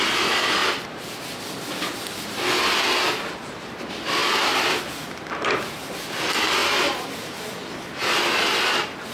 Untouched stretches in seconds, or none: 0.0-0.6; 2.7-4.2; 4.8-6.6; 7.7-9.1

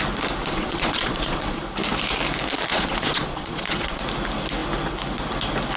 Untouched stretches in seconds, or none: 0.0-0.4; 1.6-2.7; 4.0-5.8

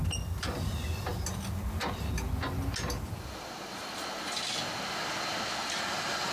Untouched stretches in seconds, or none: 0.0-6.3

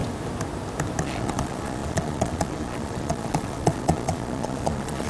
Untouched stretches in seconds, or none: 0.0-1.0

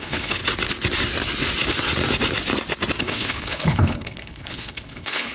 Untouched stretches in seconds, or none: 0.4-3.0

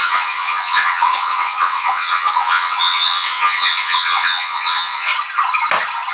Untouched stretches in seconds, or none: 5.1-6.1

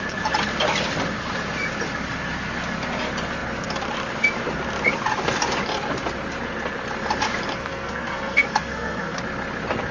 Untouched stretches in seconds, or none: 0.0-7.6; 9.2-9.9